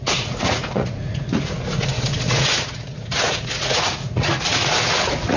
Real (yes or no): no